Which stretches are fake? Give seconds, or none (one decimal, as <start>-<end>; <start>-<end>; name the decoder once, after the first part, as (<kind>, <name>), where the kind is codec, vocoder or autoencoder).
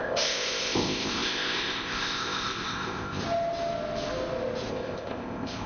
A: 0.0-3.2 (codec, ZipCodec); 4.7-5.7